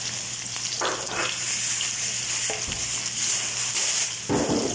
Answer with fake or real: real